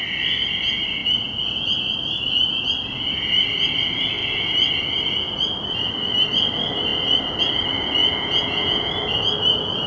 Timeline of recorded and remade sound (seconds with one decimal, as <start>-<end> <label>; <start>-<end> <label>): 0.0-8.0 recorded; 8.0-8.9 remade; 8.9-9.9 recorded